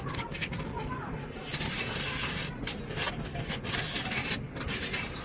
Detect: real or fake real